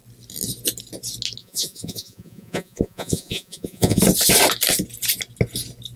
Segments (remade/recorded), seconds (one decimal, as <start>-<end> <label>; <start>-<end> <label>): 0.0-1.4 recorded; 1.4-4.0 remade; 4.0-6.0 recorded